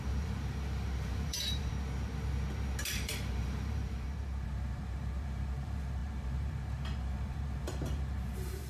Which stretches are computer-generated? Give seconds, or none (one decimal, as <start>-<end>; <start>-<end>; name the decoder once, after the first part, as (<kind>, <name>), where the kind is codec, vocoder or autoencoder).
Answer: 0.0-1.7 (vocoder, BigVGAN v2); 2.9-8.7